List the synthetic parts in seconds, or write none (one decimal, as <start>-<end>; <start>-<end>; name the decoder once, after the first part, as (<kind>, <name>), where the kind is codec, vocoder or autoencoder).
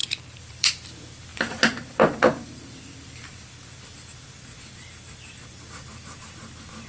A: 0.0-0.7 (vocoder, BigVGAN v2); 1.3-3.5